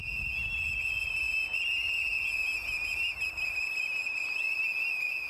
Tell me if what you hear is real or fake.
real